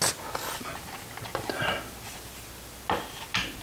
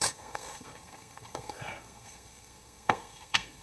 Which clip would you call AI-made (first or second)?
second